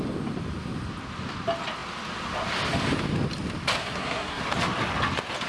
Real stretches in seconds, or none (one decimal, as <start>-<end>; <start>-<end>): 0.0-3.8; 4.4-5.5